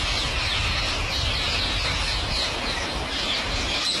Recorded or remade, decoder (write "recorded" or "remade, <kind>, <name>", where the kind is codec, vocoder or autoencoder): recorded